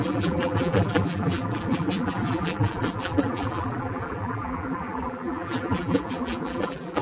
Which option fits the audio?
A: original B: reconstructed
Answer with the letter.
B